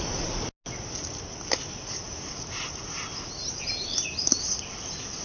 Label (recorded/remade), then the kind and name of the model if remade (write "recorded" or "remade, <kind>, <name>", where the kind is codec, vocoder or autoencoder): recorded